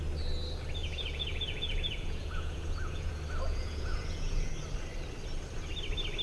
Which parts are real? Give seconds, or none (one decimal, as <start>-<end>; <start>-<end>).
0.0-0.8; 3.1-3.5; 4.5-6.2